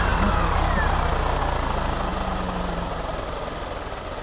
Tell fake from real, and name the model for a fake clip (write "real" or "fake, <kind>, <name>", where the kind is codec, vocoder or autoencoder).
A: real